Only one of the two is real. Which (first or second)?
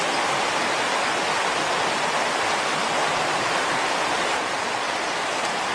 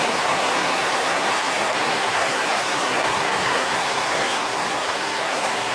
first